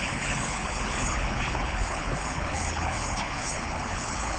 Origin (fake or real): fake